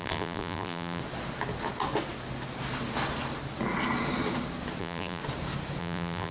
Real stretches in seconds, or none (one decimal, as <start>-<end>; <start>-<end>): 1.0-4.8; 5.2-5.8